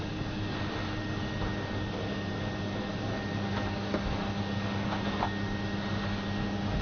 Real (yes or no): yes